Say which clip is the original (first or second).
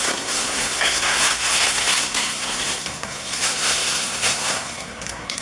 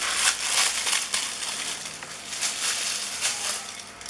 second